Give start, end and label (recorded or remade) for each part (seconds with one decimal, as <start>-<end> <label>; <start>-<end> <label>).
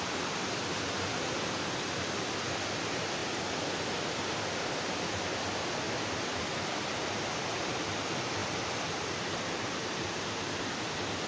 0.0-11.3 recorded